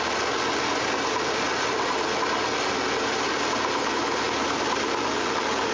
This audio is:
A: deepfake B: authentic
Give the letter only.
B